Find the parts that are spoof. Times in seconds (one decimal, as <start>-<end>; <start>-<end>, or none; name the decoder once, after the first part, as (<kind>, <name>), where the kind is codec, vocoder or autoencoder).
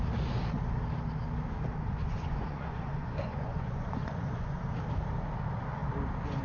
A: 2.0-4.6 (vocoder, Vocos)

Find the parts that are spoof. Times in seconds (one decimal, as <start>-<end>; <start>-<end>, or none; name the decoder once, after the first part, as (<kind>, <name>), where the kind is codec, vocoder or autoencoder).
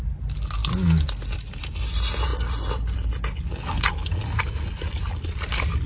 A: none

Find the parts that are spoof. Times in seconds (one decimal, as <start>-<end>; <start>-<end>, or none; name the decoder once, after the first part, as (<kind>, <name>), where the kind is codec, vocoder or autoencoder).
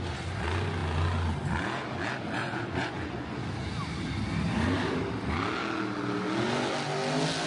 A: 2.4-3.4 (vocoder, Vocos)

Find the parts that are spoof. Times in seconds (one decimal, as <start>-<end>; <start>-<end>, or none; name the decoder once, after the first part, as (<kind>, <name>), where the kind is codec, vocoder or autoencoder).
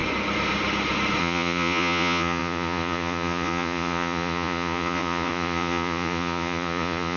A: 1.2-7.2 (vocoder, Vocos)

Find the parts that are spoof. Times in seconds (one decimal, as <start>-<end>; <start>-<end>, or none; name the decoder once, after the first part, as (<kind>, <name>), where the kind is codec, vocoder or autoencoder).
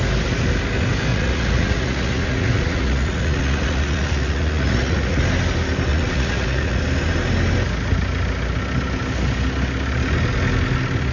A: 1.1-5.2 (vocoder, Vocos); 5.9-6.8